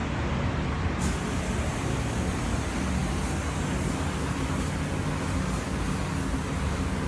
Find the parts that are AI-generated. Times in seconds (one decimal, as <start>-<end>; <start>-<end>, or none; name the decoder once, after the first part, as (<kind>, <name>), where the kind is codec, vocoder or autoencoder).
none